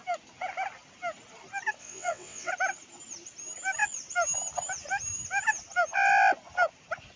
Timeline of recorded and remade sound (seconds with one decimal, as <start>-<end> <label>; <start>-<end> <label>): 0.0-1.8 recorded; 1.8-2.5 remade; 2.5-7.2 recorded